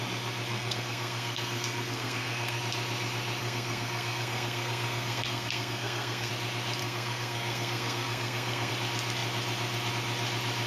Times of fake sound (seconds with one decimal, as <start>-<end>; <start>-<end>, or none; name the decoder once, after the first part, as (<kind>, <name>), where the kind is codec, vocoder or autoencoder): 0.5-2.6 (codec, SNAC); 3.4-6.3; 6.8-8.7